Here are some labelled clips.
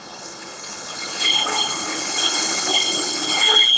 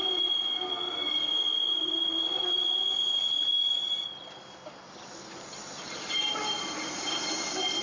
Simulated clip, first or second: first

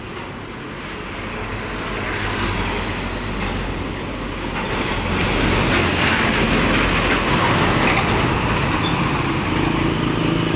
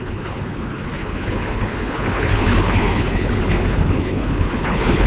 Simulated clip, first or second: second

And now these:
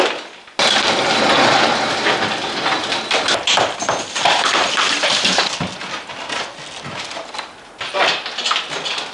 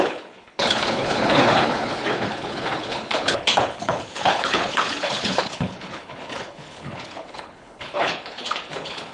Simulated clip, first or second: second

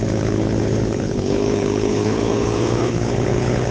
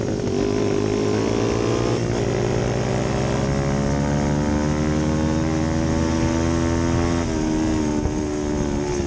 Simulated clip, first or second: first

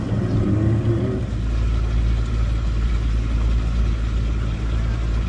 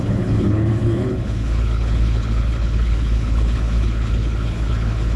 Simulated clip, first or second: second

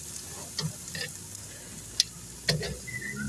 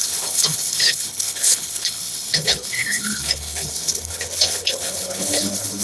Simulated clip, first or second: second